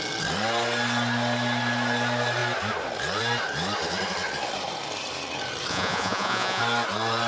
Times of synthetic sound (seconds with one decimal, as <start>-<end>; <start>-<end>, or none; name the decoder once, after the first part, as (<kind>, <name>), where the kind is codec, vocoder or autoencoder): 5.7-6.6 (vocoder, Vocos)